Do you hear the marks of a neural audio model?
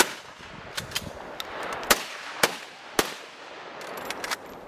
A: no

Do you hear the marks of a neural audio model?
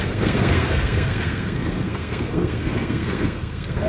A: yes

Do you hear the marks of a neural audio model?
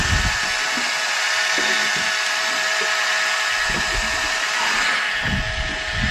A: no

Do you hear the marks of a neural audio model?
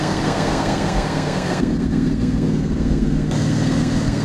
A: yes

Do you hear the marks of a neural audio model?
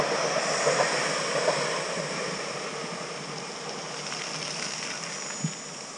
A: no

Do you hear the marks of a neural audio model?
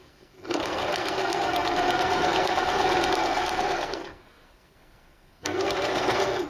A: yes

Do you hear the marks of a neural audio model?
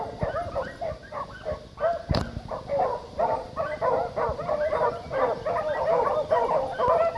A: no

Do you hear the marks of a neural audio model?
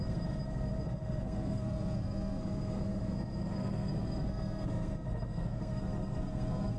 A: yes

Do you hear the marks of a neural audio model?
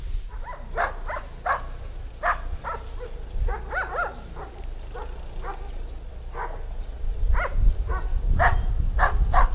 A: no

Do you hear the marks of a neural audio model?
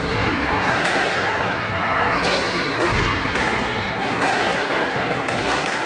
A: yes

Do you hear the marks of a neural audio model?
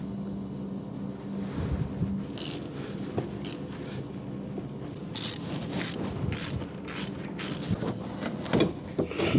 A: no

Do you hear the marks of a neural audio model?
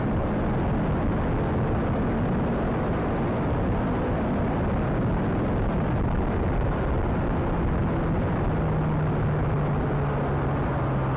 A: no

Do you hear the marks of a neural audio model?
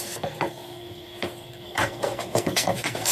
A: yes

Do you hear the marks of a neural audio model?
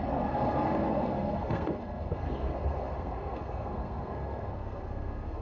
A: yes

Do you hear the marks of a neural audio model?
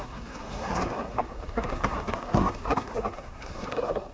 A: yes